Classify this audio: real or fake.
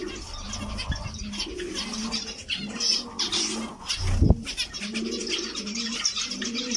real